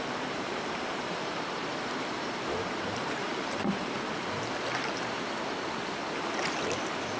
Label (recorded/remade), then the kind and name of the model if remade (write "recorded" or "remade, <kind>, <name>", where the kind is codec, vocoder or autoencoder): remade, vocoder, BigVGAN v2